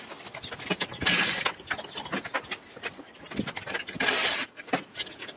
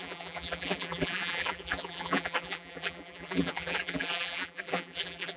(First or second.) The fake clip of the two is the second